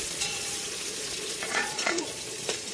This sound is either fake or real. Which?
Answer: fake